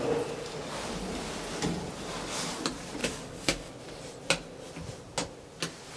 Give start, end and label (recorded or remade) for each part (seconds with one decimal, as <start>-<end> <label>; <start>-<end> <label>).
0.0-3.0 recorded; 3.0-3.7 remade; 3.7-6.0 recorded